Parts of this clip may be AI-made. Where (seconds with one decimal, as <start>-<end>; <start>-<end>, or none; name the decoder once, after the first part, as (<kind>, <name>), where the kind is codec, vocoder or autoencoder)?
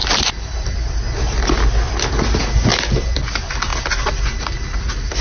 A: none